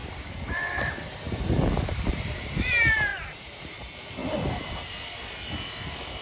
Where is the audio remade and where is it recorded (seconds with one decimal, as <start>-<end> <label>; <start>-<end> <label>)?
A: 0.0-4.2 remade; 4.2-6.2 recorded